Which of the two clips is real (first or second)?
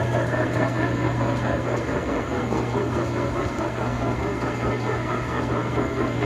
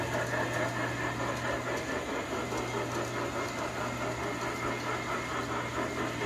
second